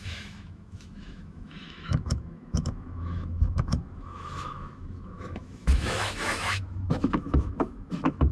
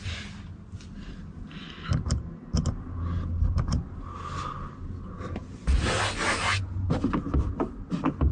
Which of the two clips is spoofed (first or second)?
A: first